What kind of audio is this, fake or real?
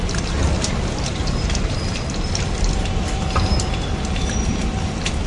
fake